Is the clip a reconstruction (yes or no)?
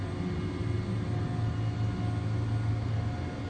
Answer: no